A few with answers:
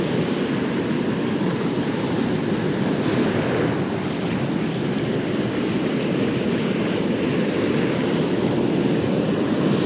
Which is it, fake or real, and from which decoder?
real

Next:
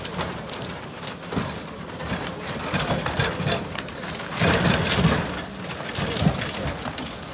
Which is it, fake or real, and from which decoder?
real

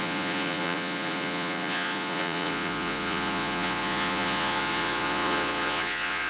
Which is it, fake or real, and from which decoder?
fake, vocoder, Vocos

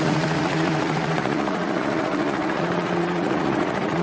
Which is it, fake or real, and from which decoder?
fake, vocoder, Vocos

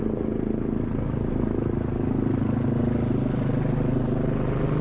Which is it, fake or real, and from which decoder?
real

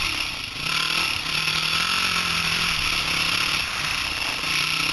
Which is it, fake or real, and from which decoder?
real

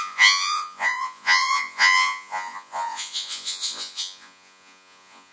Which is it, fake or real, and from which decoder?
fake, vocoder, Vocos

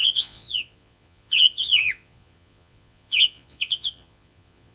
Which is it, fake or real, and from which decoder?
fake, vocoder, Vocos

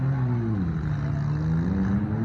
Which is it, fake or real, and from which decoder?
real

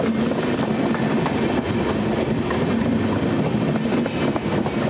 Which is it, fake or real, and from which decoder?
real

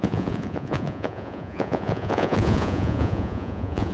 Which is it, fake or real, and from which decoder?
fake, vocoder, Vocos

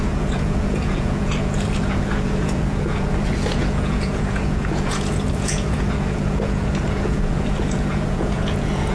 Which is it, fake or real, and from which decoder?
fake, vocoder, Vocos